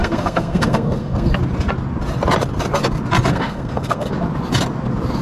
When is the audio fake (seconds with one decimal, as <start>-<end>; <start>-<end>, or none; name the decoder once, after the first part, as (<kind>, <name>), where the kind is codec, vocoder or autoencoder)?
0.0-1.3 (codec, SNAC); 3.3-4.1